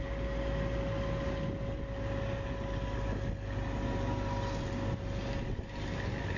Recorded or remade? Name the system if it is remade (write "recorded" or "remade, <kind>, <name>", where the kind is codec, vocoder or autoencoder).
recorded